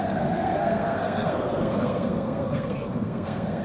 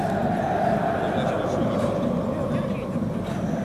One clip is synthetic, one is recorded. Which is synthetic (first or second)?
first